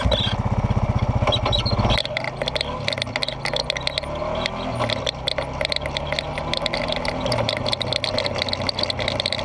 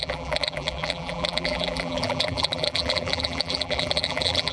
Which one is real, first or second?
first